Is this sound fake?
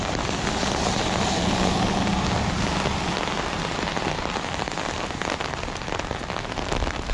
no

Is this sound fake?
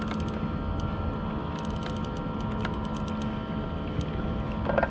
no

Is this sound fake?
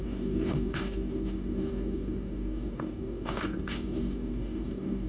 yes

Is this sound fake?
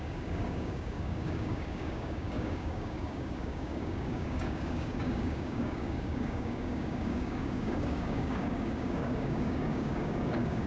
yes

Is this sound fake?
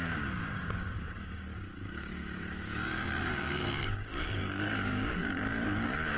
yes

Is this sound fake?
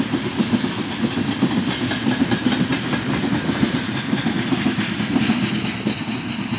no